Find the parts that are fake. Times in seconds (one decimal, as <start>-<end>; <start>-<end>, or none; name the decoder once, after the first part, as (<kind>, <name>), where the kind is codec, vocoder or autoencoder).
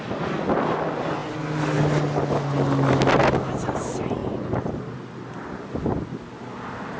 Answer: none